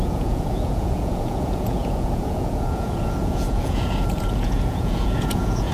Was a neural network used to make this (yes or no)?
yes